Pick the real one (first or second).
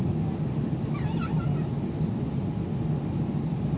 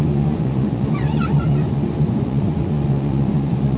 first